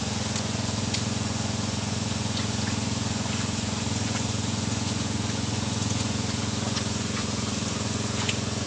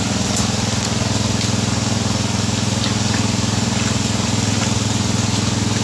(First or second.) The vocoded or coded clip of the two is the first